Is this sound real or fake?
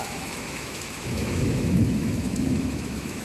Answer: fake